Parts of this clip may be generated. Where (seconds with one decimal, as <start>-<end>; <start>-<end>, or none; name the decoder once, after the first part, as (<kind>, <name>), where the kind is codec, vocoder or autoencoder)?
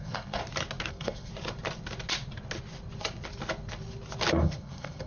0.0-0.4 (codec, SNAC); 0.9-1.3; 4.3-5.1